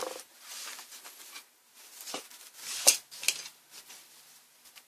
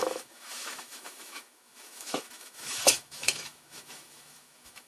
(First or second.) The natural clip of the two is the first